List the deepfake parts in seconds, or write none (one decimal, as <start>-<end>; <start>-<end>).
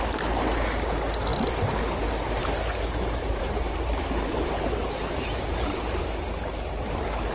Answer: 2.4-6.0